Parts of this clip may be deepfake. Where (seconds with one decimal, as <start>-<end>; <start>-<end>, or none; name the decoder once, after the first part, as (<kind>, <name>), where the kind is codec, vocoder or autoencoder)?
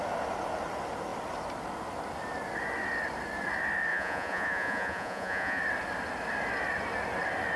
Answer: 3.9-5.6 (vocoder, Vocos)